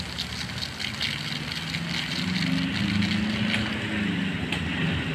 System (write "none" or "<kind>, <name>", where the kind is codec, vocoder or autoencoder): none